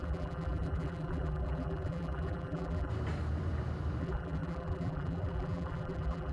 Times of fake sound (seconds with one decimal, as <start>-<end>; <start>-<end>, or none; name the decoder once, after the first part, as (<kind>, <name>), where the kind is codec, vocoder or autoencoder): 0.0-2.9 (vocoder, BigVGAN v2); 4.0-6.3